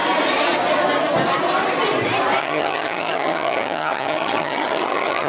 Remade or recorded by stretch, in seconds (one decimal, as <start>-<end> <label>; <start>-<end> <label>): 0.0-2.4 recorded; 2.4-5.3 remade